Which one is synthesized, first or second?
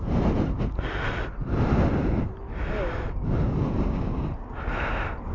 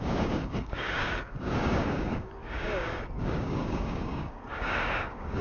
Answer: second